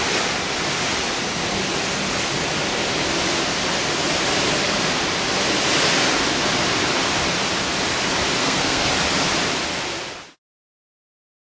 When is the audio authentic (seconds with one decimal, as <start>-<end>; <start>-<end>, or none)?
0.0-8.4; 8.9-11.4